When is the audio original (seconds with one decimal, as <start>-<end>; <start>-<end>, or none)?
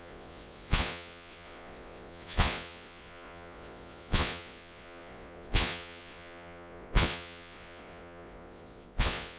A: none